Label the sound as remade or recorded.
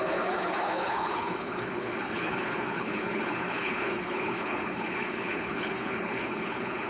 remade